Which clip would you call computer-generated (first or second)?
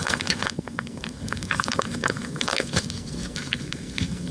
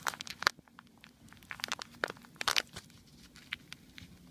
first